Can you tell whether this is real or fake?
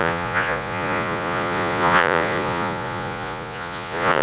fake